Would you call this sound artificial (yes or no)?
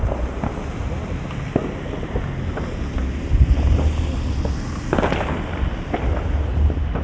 no